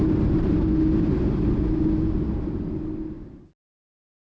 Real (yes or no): yes